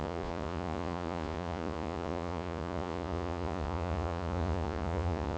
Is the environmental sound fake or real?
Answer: fake